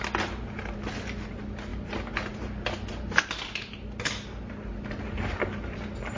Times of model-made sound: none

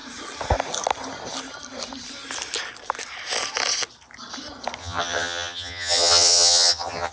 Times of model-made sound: 4.8-7.1 (vocoder, HiFi-GAN)

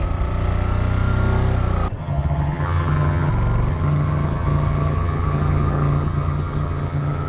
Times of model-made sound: 2.0-3.3 (vocoder, HiFi-GAN); 3.7-7.3

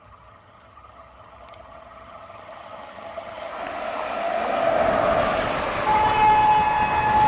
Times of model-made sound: 0.0-3.5 (vocoder, HiFi-GAN)

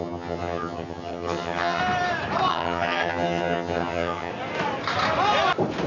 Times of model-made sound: 0.0-1.8 (vocoder, HiFi-GAN); 2.5-4.3

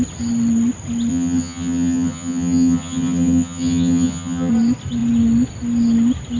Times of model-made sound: 1.1-4.5 (vocoder, HiFi-GAN)

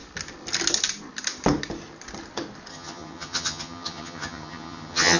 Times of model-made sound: 2.7-5.2 (vocoder, HiFi-GAN)